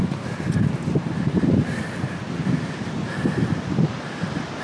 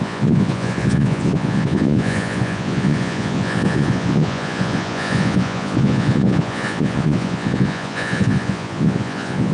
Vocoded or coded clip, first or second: second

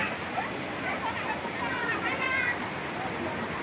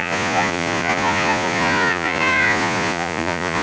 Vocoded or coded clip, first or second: second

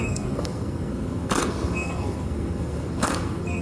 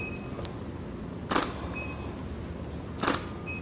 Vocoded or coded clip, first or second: first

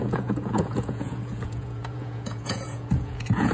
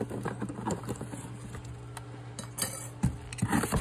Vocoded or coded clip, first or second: first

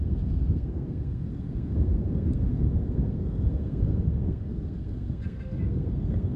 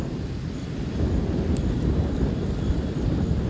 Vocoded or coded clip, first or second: first